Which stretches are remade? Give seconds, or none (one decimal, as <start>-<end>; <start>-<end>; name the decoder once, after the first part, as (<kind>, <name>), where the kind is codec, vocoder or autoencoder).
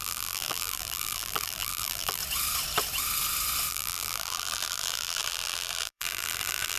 0.0-2.2 (vocoder, BigVGAN v2); 3.7-6.8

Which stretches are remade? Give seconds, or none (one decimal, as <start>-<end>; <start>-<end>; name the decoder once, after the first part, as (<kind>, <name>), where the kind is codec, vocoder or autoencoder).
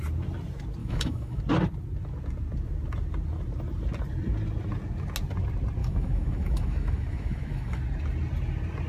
0.8-1.4 (autoencoder, DAC-VAE); 5.8-7.8